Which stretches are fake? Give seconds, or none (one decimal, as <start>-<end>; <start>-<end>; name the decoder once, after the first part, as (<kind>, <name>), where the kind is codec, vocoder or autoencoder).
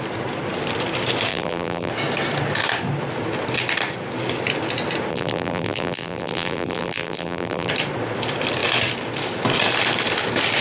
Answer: 1.3-1.9 (vocoder, BigVGAN v2); 5.1-7.7